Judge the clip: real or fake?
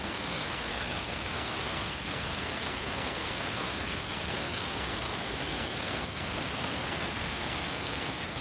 fake